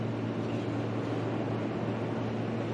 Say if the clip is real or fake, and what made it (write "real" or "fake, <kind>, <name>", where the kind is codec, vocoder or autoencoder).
real